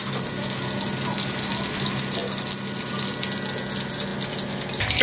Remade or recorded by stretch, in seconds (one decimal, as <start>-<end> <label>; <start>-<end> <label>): 0.0-5.0 recorded